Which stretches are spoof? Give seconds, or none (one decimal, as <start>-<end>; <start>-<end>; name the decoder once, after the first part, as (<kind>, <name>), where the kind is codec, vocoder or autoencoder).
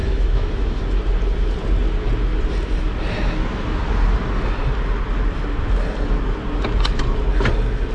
0.0-0.8 (autoencoder, DAC-VAE)